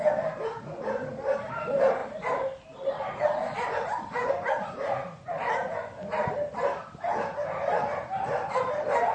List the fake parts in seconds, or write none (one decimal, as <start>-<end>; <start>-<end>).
none